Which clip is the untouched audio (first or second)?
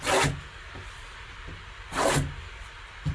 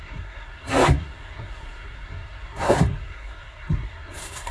first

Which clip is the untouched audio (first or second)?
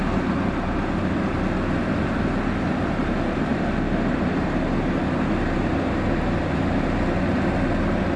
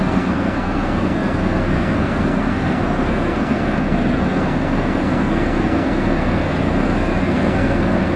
first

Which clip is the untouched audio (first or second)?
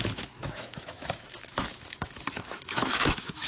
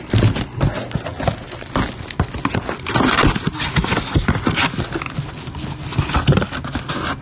second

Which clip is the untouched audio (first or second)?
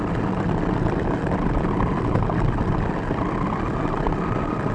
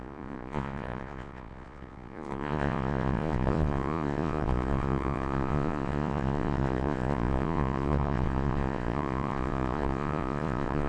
first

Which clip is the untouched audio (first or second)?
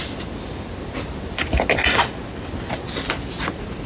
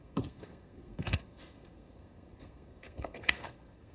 first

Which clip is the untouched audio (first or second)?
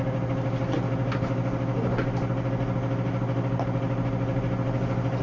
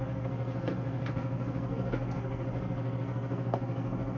first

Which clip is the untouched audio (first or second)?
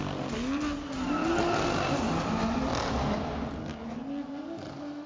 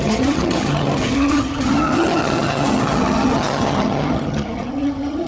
first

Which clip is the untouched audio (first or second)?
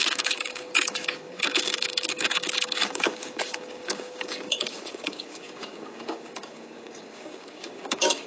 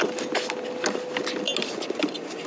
second